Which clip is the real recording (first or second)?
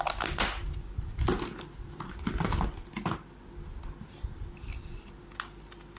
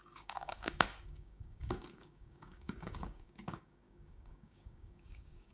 first